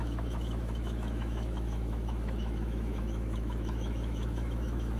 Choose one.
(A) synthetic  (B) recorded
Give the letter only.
A